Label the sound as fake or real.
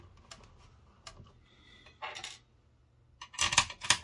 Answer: real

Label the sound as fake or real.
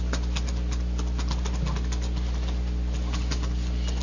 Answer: real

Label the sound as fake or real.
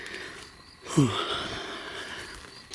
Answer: real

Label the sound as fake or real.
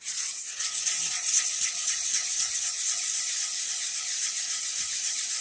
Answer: fake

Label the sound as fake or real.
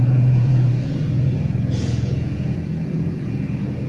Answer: fake